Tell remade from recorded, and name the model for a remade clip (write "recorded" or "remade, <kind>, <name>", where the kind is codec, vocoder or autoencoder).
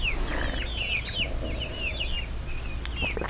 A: recorded